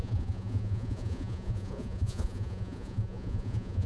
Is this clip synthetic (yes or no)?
yes